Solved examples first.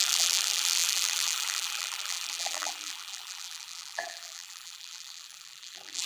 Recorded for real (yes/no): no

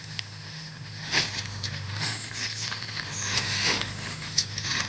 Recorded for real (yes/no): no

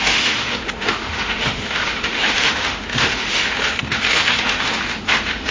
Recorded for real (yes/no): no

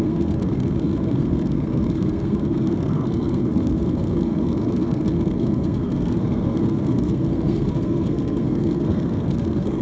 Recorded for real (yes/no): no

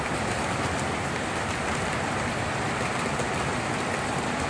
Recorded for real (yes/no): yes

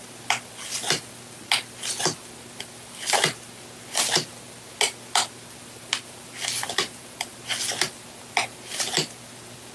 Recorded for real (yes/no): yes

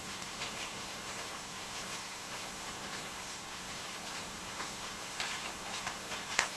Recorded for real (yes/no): no